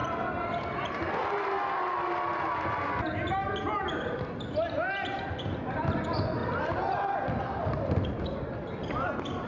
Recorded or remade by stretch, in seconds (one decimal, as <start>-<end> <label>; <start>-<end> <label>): 0.0-9.5 recorded